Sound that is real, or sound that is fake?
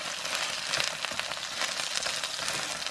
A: real